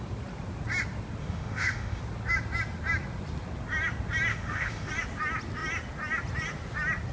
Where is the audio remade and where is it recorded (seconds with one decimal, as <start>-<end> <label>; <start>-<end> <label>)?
0.0-1.2 recorded; 1.2-2.0 remade; 2.0-4.3 recorded; 4.3-4.9 remade; 4.9-7.1 recorded

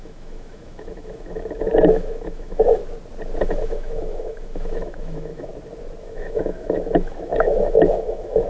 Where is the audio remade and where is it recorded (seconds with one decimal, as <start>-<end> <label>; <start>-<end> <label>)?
0.0-2.8 remade; 2.8-3.4 recorded; 3.4-5.5 remade; 5.5-6.0 recorded; 6.0-8.5 remade

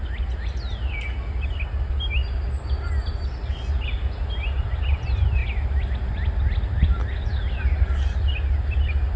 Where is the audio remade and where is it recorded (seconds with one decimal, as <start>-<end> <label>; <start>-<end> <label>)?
0.0-9.2 recorded

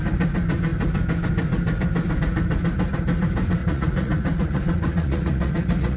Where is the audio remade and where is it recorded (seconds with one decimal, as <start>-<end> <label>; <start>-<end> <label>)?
0.0-3.6 recorded; 3.6-6.0 remade